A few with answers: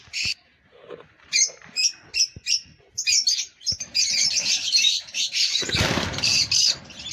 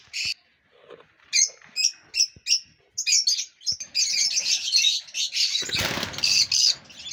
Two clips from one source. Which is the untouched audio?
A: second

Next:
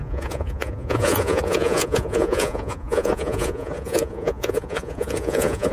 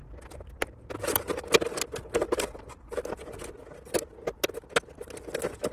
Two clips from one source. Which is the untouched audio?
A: second